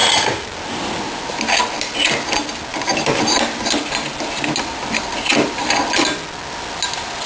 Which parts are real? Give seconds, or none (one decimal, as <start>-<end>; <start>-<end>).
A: 0.0-2.7; 3.7-7.3